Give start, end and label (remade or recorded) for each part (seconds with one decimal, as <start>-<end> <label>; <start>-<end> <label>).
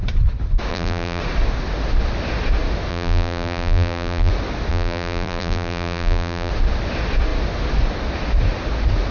0.0-0.7 recorded; 0.7-1.2 remade; 1.2-2.9 recorded; 2.9-4.3 remade; 4.3-4.7 recorded; 4.7-6.5 remade; 6.5-9.1 recorded